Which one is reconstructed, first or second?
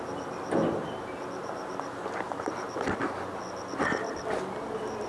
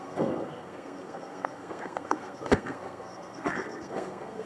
second